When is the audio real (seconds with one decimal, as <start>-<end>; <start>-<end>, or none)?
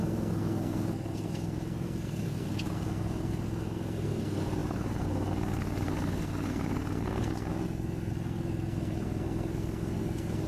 none